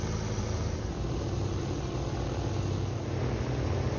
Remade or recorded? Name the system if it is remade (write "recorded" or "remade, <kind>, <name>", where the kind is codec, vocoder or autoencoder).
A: recorded